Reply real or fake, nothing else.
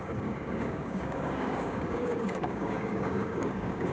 fake